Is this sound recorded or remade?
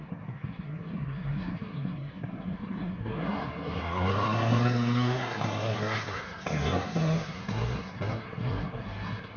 remade